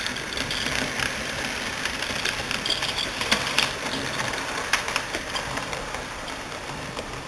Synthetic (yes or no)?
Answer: yes